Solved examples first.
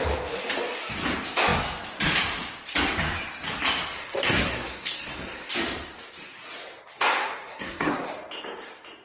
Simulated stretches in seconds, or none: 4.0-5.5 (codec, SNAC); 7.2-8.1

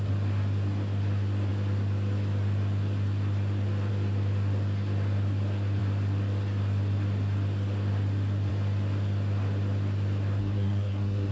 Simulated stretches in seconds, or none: 10.4-11.3 (codec, SNAC)

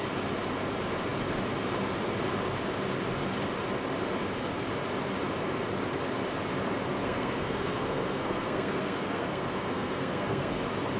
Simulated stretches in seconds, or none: 7.0-10.6 (codec, SNAC)

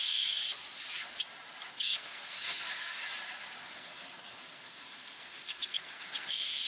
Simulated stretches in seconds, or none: 0.0-0.4 (codec, SNAC); 1.7-3.0; 3.6-6.7